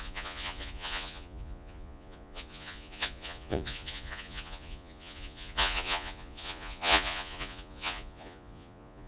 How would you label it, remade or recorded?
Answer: remade